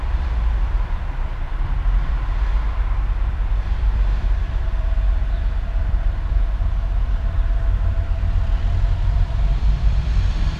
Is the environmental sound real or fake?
fake